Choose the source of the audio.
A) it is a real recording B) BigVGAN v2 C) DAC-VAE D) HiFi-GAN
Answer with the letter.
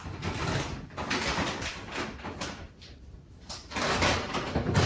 B